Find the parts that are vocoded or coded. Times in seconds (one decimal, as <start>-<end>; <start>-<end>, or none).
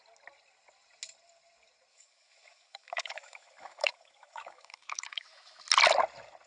1.9-5.6